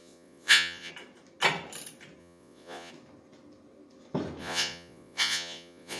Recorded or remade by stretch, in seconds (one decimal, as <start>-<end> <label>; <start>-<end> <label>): 0.0-0.9 remade; 0.9-2.2 recorded; 2.2-2.9 remade; 2.9-4.4 recorded; 4.4-6.0 remade

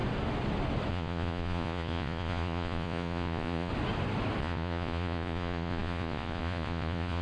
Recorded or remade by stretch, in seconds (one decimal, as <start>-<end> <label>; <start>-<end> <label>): 0.0-0.9 recorded; 0.9-3.7 remade; 3.7-4.4 recorded; 4.4-7.2 remade

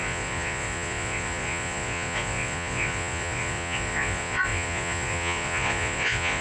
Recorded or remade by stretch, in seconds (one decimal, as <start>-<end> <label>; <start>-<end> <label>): 0.0-6.4 remade

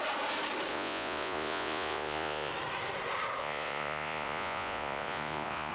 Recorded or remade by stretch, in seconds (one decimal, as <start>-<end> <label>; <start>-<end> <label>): 0.0-0.7 recorded; 0.7-2.5 remade; 2.5-3.4 recorded; 3.4-5.7 remade

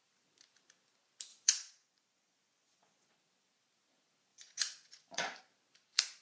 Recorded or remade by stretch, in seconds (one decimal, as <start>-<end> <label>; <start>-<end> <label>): 0.0-1.3 recorded; 1.3-3.1 remade; 3.1-4.3 recorded; 4.3-5.4 remade; 5.4-6.2 recorded

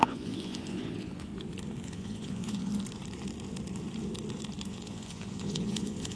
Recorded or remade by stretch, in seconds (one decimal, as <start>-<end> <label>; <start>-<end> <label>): 0.0-1.3 remade; 1.3-1.8 recorded; 1.8-2.7 remade; 2.7-4.7 recorded; 4.7-6.2 remade

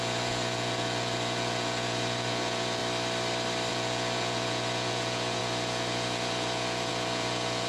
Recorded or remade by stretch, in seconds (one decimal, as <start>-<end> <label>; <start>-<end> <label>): 0.0-2.8 remade; 2.8-3.7 recorded; 3.7-7.7 remade

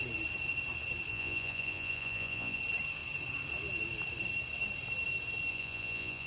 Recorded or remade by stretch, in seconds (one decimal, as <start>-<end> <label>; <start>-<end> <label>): 0.0-1.1 recorded; 1.1-2.6 remade; 2.6-5.5 recorded; 5.5-6.3 remade